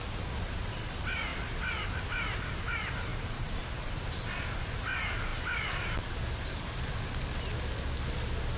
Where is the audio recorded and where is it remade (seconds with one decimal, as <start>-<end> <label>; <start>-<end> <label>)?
0.0-3.1 recorded; 3.1-3.9 remade; 3.9-8.6 recorded